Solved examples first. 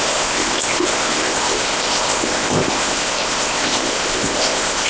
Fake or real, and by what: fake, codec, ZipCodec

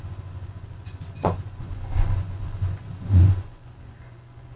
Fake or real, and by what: fake, vocoder, Vocos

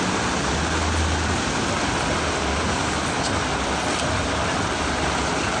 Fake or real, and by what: real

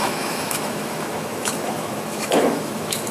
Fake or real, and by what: fake, autoencoder, DAC-VAE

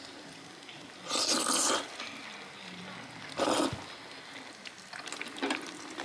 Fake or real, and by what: real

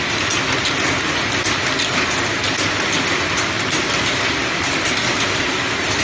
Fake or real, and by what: real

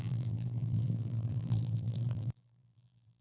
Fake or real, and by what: fake, vocoder, BigVGAN v2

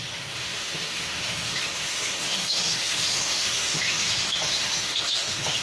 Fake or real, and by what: fake, autoencoder, DAC-VAE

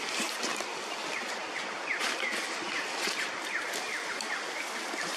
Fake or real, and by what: fake, vocoder, BigVGAN v2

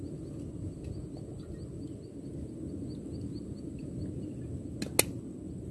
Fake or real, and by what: real